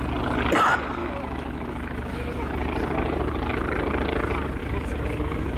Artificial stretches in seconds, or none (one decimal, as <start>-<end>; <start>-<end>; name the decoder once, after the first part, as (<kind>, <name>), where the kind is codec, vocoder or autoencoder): 1.0-2.5 (autoencoder, DAC-VAE); 4.6-5.6